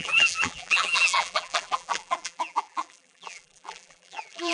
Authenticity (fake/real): fake